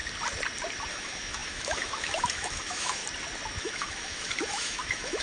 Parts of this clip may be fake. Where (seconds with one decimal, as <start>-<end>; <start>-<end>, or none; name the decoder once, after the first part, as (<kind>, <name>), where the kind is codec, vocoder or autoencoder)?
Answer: 0.9-3.0 (autoencoder, DAC-VAE); 3.6-5.2